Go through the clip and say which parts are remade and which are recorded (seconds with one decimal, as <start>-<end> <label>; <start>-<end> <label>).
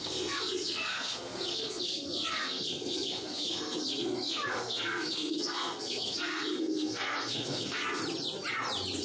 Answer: 0.0-8.0 remade; 8.0-9.0 recorded